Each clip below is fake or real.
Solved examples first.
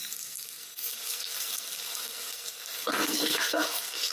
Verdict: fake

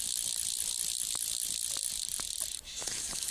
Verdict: real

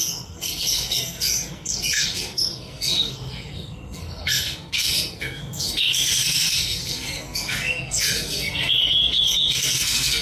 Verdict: fake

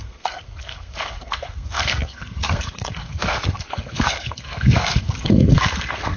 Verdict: fake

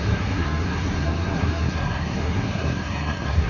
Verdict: fake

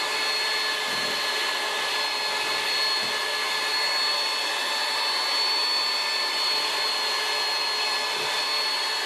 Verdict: real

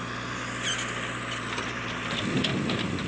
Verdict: real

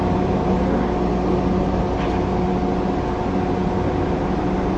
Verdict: real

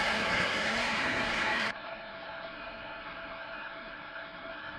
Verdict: fake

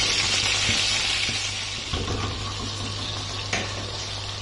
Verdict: real